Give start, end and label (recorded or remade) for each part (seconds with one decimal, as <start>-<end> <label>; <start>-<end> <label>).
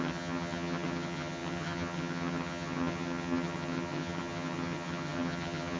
0.0-5.8 remade